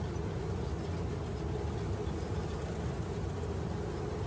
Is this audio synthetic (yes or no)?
no